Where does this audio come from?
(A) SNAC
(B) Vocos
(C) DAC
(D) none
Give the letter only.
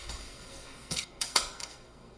A